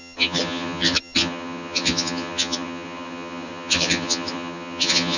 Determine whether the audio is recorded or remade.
remade